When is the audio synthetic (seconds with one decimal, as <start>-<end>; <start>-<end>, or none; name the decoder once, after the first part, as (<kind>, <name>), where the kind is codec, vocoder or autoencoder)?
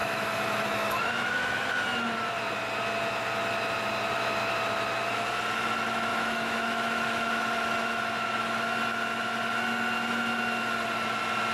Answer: 0.0-1.6 (autoencoder, DAC-VAE); 6.1-8.0